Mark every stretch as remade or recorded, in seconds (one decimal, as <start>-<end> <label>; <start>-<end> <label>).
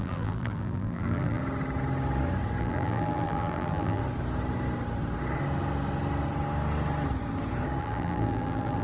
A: 0.0-1.4 remade; 1.4-2.6 recorded; 2.6-4.0 remade; 4.0-7.8 recorded; 7.8-8.8 remade